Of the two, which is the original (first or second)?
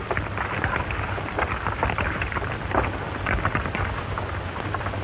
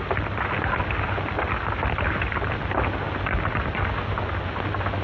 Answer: second